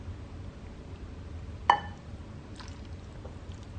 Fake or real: real